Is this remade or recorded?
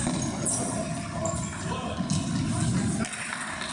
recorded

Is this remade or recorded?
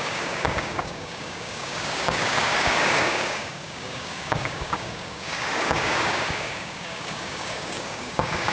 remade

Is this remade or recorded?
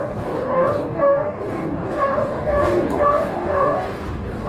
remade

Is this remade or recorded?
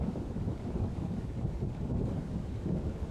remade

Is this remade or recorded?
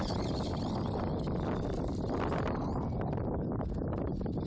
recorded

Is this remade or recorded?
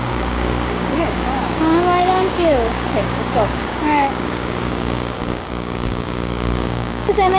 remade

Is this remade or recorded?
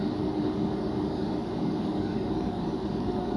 remade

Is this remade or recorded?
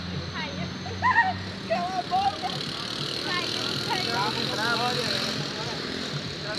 recorded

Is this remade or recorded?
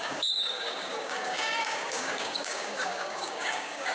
remade